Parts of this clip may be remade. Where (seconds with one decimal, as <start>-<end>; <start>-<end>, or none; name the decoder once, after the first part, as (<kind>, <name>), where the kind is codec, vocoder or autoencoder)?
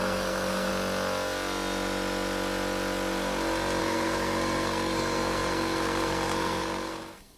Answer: 0.0-0.7 (codec, SNAC); 3.8-7.4